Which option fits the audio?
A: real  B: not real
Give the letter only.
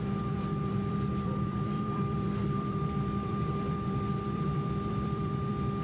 B